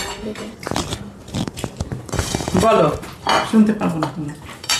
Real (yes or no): no